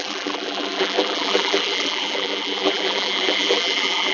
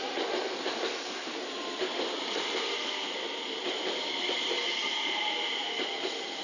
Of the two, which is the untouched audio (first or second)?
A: second